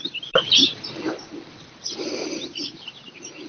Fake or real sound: real